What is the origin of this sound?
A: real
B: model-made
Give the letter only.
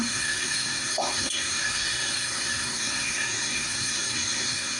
B